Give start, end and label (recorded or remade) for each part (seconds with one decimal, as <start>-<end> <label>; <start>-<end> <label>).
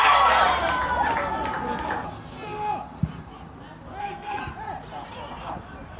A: 0.0-0.4 remade; 0.4-4.0 recorded; 4.0-4.4 remade; 4.4-6.0 recorded